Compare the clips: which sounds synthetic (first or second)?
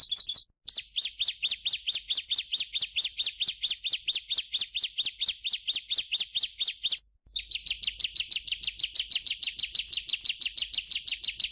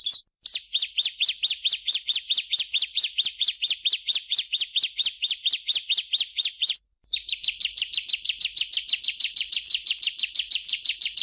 second